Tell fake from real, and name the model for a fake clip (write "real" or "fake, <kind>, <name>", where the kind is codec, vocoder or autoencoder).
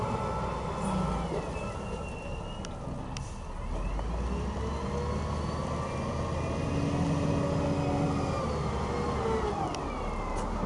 real